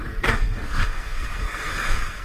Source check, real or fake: fake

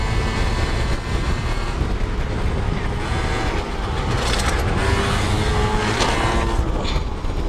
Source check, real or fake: real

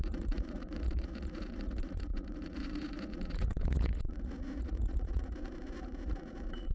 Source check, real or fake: fake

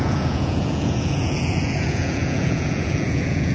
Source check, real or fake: fake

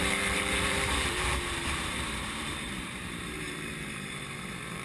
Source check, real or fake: fake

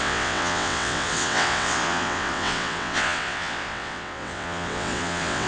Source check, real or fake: fake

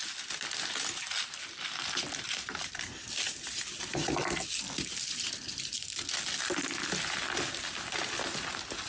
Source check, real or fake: real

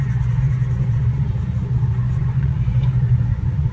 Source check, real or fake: fake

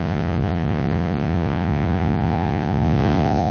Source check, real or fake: fake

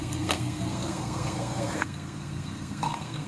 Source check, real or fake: fake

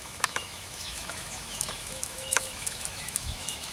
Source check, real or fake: fake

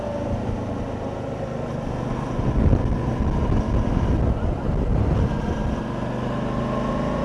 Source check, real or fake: real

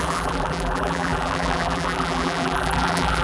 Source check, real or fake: fake